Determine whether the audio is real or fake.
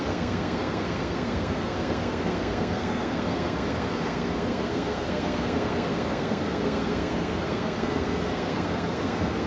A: fake